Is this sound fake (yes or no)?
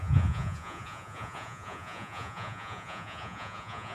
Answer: yes